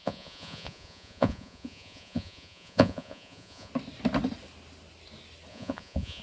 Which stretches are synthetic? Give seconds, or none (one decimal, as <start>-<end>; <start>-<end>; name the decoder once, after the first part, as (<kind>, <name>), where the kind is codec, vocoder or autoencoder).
0.0-3.7 (vocoder, Vocos); 5.5-6.2